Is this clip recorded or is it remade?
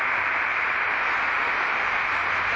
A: recorded